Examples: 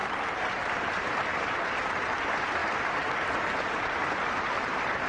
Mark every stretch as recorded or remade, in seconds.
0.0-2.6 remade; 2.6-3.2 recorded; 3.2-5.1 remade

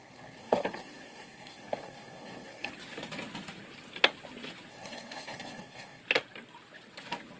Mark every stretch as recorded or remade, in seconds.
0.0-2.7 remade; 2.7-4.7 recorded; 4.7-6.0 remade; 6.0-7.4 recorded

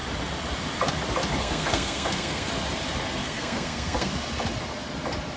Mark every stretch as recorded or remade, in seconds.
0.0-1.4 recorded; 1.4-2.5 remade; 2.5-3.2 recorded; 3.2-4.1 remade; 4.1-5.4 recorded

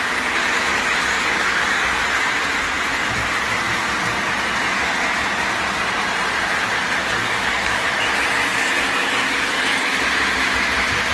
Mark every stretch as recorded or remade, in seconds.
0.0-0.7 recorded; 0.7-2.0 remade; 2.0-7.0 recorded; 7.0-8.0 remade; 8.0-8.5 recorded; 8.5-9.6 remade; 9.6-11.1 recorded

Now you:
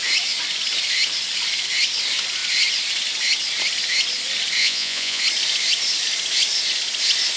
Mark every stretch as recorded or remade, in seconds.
0.0-4.6 recorded; 4.6-5.2 remade; 5.2-7.4 recorded

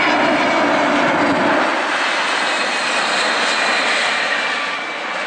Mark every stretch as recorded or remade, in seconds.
0.0-5.3 recorded

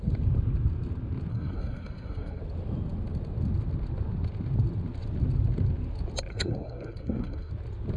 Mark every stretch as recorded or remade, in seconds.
0.0-1.3 recorded; 1.3-2.4 remade; 2.4-6.3 recorded; 6.3-7.5 remade; 7.5-8.0 recorded